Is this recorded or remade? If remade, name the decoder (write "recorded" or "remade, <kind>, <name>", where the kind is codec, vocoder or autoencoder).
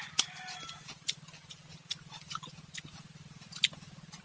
recorded